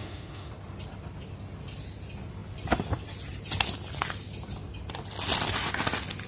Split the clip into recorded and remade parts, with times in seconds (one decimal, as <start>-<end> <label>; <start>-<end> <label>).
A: 0.0-0.5 remade; 0.5-6.3 recorded